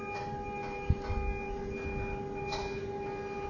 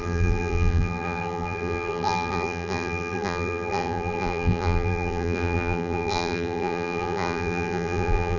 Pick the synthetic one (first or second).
second